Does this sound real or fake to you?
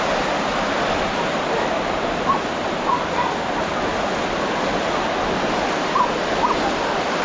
real